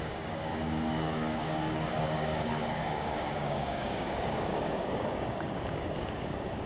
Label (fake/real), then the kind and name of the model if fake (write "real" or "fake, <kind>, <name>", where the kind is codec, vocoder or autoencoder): fake, codec, DAC